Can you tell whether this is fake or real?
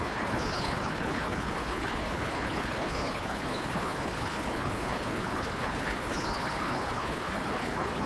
fake